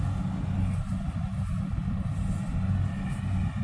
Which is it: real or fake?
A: real